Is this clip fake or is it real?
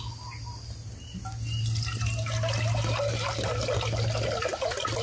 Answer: real